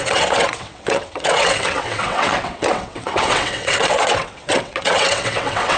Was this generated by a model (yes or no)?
yes